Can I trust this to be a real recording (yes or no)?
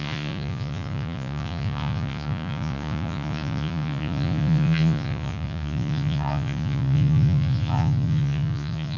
no